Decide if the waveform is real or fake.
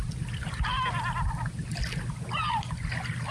real